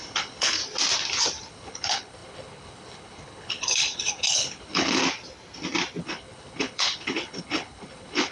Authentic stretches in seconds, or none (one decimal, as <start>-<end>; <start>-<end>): 0.6-1.5; 5.0-6.0